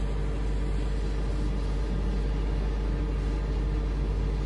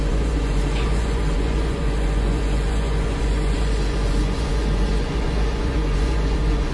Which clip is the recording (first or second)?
first